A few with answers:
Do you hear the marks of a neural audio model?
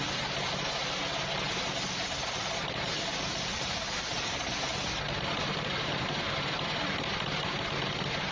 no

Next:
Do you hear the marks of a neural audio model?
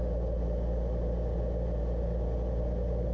no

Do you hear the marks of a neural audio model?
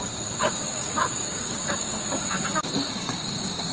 yes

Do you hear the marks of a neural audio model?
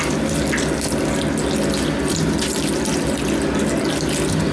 no